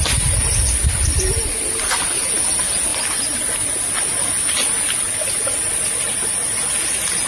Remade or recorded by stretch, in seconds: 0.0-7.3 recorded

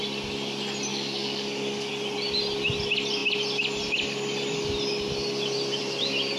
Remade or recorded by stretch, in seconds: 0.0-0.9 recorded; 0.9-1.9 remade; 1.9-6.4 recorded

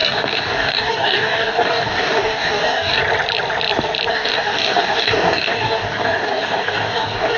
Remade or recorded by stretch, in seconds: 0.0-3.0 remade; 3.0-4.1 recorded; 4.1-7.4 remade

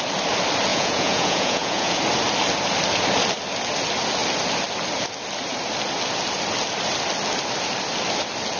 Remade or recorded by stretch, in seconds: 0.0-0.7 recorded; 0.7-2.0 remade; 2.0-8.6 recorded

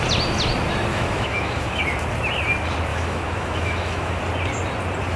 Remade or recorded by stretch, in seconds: 0.0-0.9 recorded; 0.9-1.8 remade; 1.8-2.9 recorded; 2.9-4.2 remade; 4.2-5.2 recorded